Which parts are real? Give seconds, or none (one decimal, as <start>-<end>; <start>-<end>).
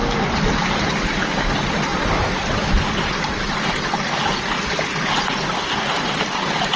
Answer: 0.0-6.8